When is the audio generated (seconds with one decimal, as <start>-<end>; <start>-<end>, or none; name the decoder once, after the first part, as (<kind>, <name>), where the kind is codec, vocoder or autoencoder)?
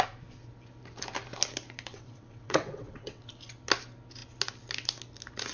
1.9-3.2 (vocoder, WaveNeXt)